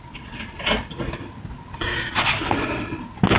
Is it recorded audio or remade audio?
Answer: recorded